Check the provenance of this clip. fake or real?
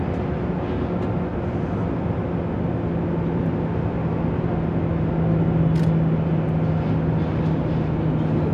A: real